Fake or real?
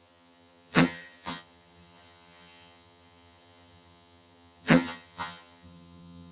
fake